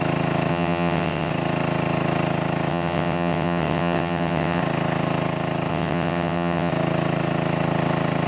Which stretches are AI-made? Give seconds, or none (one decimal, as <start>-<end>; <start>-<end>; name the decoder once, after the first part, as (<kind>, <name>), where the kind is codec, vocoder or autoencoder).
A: 0.5-1.3 (vocoder, WaveNeXt); 2.7-4.6; 5.7-6.7